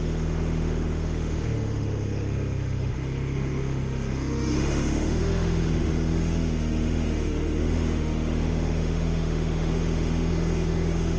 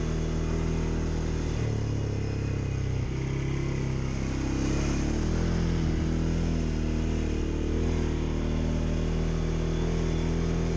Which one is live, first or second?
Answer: second